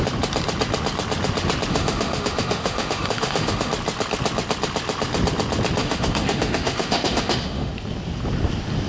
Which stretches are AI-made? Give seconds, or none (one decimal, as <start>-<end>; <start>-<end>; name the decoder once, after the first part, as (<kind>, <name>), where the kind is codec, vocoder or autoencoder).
1.7-3.7 (autoencoder, DAC-VAE); 5.8-7.7